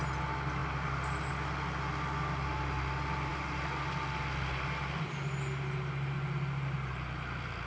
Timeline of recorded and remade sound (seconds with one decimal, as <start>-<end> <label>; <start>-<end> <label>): 0.0-7.7 recorded